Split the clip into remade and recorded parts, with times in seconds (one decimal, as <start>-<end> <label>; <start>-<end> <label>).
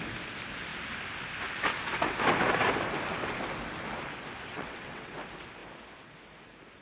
0.0-4.5 recorded; 4.5-5.1 remade; 5.1-6.8 recorded